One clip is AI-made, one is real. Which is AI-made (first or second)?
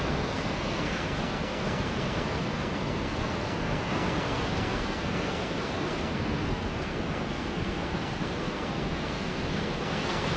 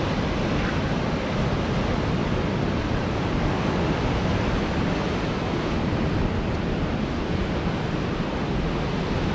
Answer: first